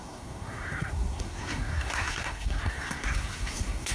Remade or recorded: remade